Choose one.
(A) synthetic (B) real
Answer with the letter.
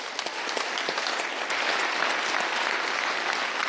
B